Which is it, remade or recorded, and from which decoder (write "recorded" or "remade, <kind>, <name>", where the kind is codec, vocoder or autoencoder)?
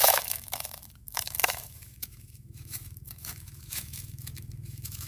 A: remade, autoencoder, DAC-VAE